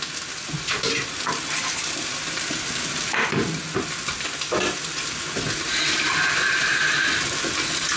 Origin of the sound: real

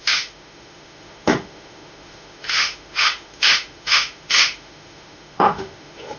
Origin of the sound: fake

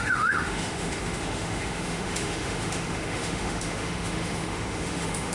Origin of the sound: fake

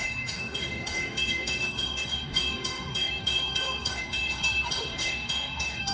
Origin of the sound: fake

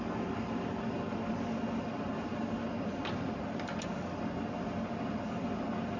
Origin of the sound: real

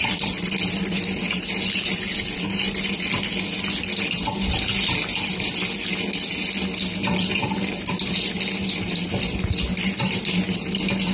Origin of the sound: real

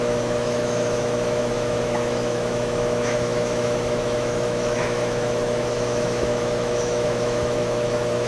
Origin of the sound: fake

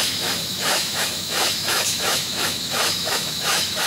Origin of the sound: fake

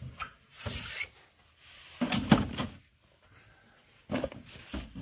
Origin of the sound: real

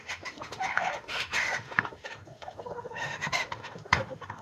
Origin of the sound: fake